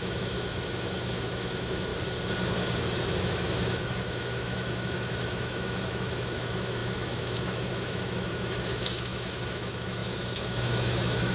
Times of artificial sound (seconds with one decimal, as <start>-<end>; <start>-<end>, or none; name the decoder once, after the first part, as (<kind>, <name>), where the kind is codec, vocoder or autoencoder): 0.0-1.9 (autoencoder, DAC-VAE); 3.2-11.3